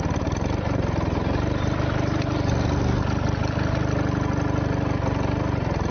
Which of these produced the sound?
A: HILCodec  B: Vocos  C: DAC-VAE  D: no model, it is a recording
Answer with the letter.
D